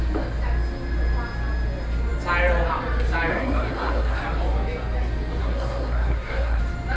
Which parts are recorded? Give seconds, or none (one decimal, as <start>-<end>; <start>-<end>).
0.0-3.3; 4.2-5.4; 6.6-7.0